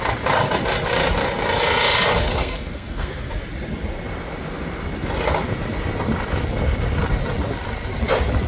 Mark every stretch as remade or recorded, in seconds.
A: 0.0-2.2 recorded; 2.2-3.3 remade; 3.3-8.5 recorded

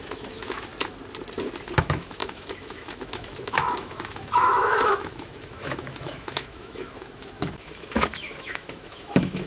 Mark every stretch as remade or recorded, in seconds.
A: 0.0-0.7 remade; 0.7-1.8 recorded; 1.8-9.5 remade

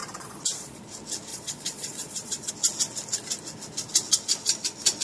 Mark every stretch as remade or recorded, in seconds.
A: 0.0-0.8 remade; 0.8-1.3 recorded; 1.3-2.5 remade; 2.5-5.0 recorded

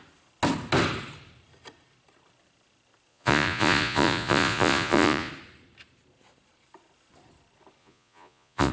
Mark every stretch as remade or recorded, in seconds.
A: 0.0-3.1 recorded; 3.1-5.3 remade; 5.3-7.8 recorded; 7.8-8.7 remade

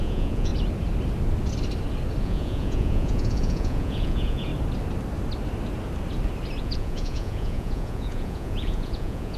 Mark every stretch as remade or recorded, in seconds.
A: 0.0-0.5 remade; 0.5-2.2 recorded; 2.2-4.5 remade; 4.5-6.6 recorded; 6.6-9.4 remade